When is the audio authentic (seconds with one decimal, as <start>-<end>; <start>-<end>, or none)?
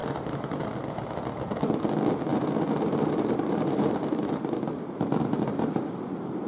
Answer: 0.0-2.3